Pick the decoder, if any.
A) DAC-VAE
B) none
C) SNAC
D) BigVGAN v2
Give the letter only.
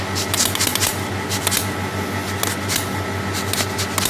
B